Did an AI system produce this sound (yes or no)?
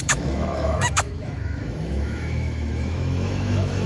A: yes